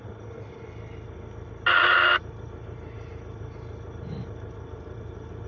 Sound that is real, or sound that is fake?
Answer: real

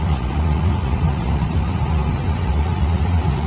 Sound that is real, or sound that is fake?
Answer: fake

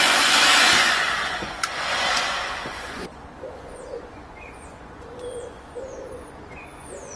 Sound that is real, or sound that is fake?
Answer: fake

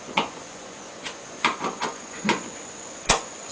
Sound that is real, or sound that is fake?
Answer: fake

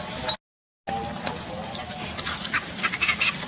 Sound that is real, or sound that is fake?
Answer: real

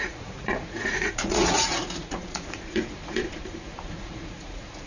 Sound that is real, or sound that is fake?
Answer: fake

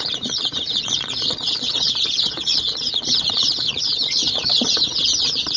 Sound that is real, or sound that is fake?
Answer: fake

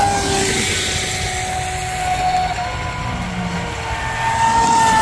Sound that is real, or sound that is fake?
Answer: real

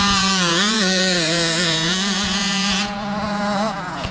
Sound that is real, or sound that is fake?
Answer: fake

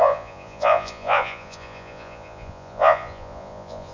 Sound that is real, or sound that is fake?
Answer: fake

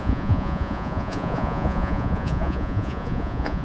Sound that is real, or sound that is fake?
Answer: fake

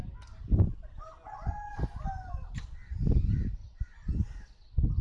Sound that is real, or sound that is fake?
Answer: real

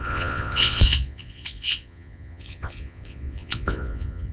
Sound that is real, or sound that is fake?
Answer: fake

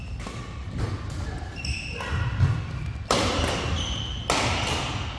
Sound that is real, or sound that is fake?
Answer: real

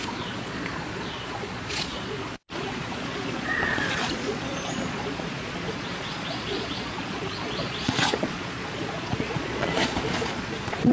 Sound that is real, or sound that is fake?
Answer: fake